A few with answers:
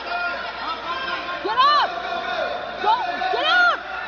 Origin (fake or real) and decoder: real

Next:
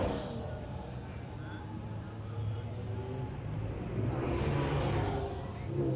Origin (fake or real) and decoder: real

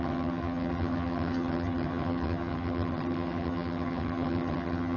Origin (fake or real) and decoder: fake, vocoder, HiFi-GAN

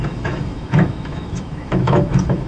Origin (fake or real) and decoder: fake, autoencoder, DAC-VAE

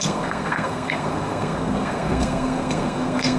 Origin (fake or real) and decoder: fake, codec, SNAC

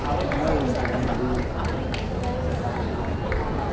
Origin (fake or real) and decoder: real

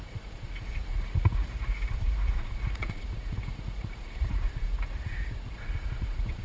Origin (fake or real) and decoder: fake, vocoder, Vocos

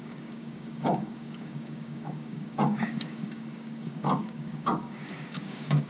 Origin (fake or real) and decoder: fake, codec, DAC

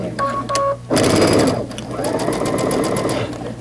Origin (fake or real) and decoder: real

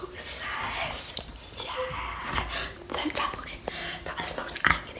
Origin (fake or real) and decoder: real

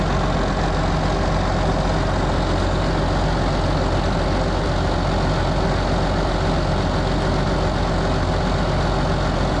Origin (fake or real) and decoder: real